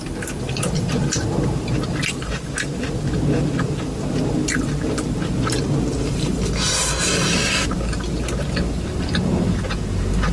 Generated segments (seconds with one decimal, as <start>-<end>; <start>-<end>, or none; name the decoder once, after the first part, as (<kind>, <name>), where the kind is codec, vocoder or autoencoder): 0.0-1.2 (vocoder, BigVGAN v2); 6.0-7.4